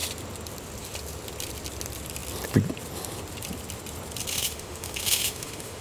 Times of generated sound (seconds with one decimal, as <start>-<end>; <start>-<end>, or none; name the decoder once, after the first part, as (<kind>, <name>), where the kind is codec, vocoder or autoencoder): 4.3-5.8 (autoencoder, DAC-VAE)